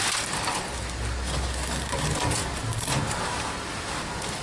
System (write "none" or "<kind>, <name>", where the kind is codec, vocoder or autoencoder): none